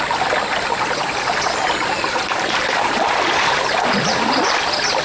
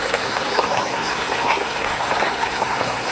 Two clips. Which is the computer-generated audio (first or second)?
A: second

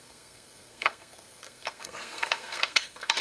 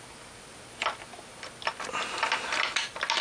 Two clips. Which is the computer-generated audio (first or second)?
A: first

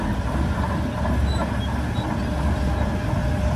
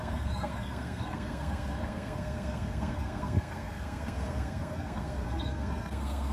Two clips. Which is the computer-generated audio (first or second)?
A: second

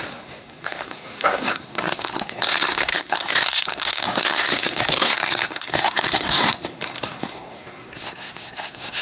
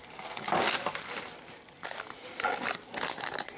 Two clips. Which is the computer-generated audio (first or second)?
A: first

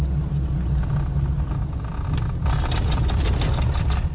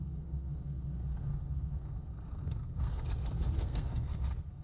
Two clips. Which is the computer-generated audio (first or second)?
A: second